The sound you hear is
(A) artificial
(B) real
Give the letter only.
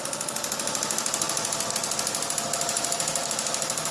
B